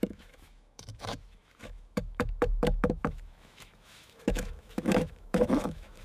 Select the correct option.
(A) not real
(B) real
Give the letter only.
A